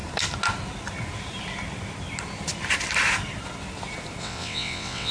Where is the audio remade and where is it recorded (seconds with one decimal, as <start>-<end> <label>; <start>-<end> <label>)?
0.0-4.2 recorded; 4.2-5.1 remade